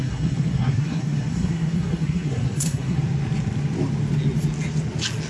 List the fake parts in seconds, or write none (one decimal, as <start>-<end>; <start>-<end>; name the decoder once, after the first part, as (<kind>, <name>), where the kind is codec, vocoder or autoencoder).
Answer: 0.0-3.0 (codec, SNAC)